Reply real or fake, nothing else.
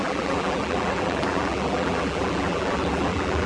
fake